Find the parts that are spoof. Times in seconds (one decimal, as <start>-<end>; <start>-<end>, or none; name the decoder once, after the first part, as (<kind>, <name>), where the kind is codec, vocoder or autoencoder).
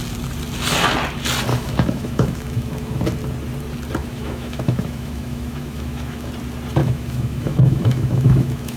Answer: 1.5-3.0 (autoencoder, DAC-VAE); 4.0-6.3; 6.8-8.8